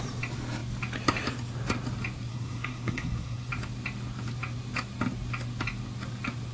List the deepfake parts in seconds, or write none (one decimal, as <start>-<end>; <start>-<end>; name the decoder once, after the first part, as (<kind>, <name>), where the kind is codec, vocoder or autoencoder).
2.3-3.5 (codec, SNAC)